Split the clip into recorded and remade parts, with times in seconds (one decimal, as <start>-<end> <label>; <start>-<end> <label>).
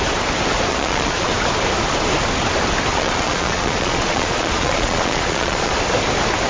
0.0-0.7 recorded; 0.7-1.3 remade; 1.3-2.9 recorded; 2.9-5.7 remade; 5.7-6.5 recorded